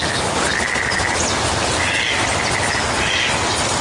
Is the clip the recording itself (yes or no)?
yes